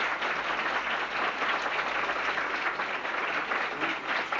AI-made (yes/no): no